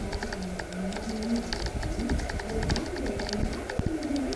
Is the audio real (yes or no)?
yes